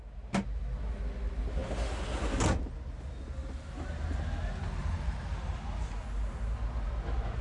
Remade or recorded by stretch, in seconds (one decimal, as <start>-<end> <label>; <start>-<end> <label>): 0.0-7.4 recorded